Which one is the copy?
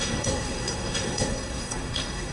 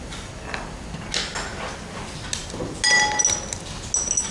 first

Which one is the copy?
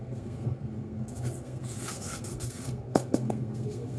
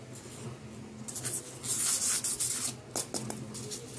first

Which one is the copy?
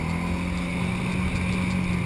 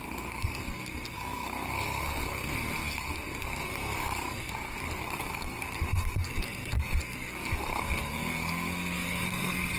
second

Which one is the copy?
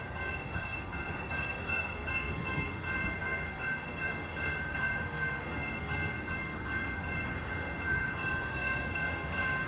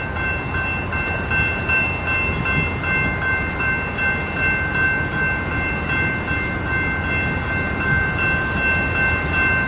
first